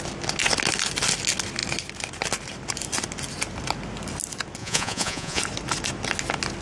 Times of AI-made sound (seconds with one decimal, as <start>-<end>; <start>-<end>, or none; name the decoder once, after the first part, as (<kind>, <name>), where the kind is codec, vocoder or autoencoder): 4.6-5.4 (vocoder, Vocos)